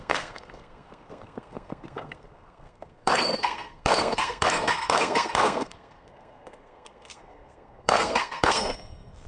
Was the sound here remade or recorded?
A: remade